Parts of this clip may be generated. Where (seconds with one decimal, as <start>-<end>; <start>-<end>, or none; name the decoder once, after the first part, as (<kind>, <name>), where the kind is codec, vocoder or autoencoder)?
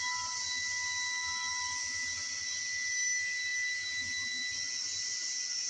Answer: none